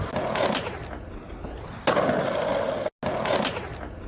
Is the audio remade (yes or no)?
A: no